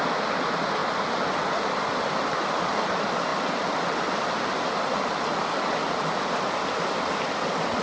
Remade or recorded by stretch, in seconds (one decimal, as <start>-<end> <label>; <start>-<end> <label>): 0.0-7.8 recorded